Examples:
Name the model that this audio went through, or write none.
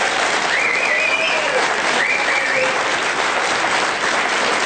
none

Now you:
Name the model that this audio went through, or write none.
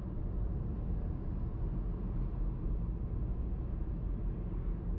none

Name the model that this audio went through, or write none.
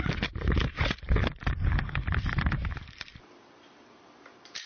vocoder, BigVGAN v2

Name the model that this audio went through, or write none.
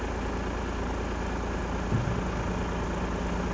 none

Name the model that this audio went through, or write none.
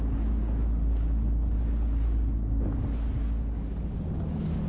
none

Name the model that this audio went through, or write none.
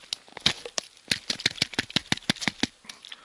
none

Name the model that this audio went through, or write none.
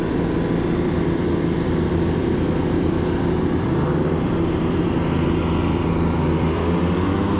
vocoder, BigVGAN v2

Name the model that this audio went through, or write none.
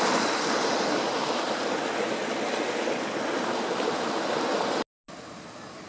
none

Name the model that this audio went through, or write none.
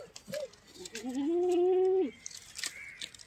none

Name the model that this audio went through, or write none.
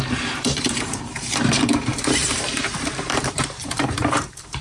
vocoder, BigVGAN v2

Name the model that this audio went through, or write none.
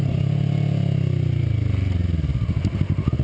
none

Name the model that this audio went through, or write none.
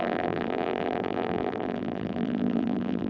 vocoder, BigVGAN v2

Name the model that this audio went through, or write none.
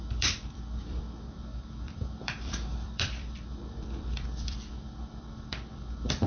vocoder, BigVGAN v2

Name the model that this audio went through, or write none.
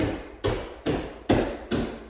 none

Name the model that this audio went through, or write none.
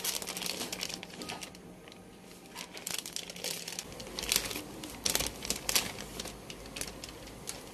none